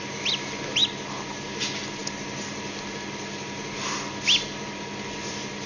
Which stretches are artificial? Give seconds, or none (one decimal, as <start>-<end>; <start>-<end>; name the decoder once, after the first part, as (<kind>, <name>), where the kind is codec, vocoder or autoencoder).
none

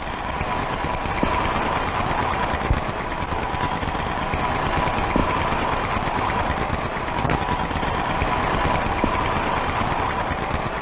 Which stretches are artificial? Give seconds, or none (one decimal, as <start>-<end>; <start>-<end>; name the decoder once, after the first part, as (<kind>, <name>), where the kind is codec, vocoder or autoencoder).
5.2-10.0 (vocoder, BigVGAN v2)

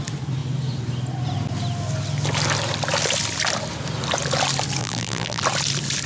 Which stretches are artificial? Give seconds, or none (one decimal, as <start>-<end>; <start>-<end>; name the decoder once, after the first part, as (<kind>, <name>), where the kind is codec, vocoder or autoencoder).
4.8-5.4 (vocoder, BigVGAN v2)

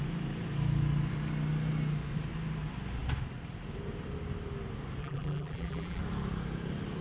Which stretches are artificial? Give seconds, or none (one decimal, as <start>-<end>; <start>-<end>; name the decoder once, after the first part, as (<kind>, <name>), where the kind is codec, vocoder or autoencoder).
5.0-6.0 (vocoder, BigVGAN v2)

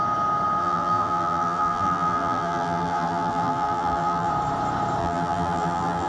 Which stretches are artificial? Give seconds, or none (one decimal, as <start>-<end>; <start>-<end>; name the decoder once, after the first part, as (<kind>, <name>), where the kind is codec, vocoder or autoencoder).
0.6-4.3 (vocoder, BigVGAN v2); 5.0-6.1

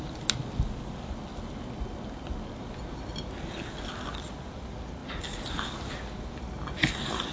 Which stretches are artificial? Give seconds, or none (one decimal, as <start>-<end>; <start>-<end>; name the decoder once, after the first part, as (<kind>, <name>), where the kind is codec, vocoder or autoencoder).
none

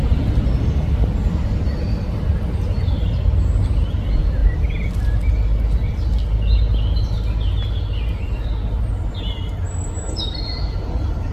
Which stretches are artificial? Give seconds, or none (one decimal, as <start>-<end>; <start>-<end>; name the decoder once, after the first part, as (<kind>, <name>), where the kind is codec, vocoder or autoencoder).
none